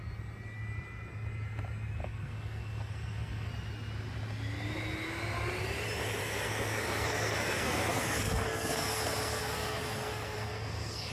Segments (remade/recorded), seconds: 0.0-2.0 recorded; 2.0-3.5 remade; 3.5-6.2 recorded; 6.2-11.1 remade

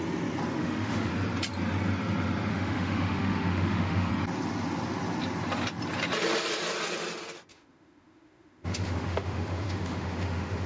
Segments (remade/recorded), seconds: 0.0-0.6 recorded; 0.6-1.1 remade; 1.1-2.5 recorded; 2.5-4.1 remade; 4.1-7.5 recorded; 7.5-10.7 remade

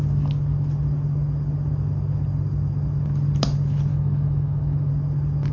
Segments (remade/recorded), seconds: 0.0-3.9 recorded; 3.9-4.9 remade; 4.9-5.5 recorded

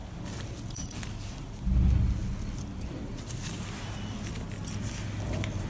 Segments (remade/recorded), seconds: 0.0-1.0 remade; 1.0-5.7 recorded

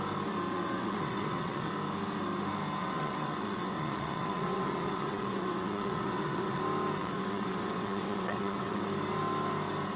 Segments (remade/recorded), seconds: 0.0-0.5 recorded; 0.5-1.7 remade; 1.7-2.8 recorded; 2.8-6.6 remade; 6.6-7.0 recorded; 7.0-8.8 remade; 8.8-10.0 recorded

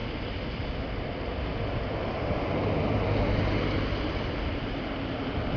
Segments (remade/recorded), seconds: 0.0-5.6 recorded

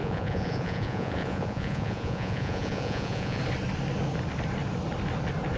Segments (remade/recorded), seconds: 0.0-3.4 remade; 3.4-5.6 recorded

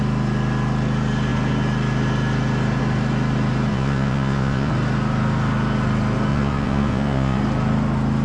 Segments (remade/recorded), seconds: 0.0-3.7 recorded; 3.7-4.7 remade; 4.7-6.3 recorded; 6.3-7.4 remade; 7.4-8.2 recorded